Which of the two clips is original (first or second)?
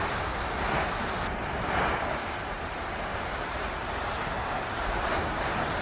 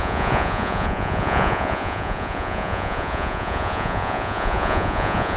first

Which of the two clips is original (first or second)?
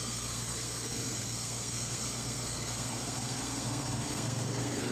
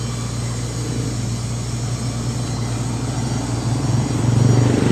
second